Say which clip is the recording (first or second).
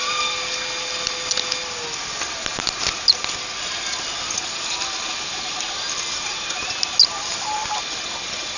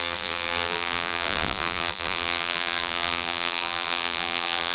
first